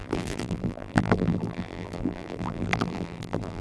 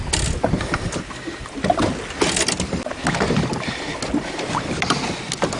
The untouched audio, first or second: second